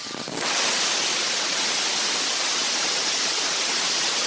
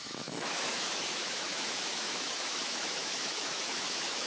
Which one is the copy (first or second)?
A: second